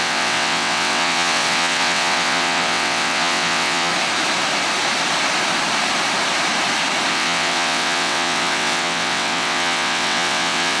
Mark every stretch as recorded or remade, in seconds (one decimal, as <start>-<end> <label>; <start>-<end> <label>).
0.0-3.9 remade; 3.9-7.1 recorded; 7.1-10.8 remade